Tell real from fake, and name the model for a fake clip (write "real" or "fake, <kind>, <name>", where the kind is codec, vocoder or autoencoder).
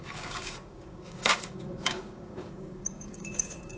fake, codec, DAC